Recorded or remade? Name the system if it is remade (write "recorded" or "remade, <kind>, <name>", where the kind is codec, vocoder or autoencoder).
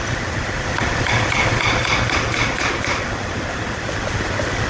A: recorded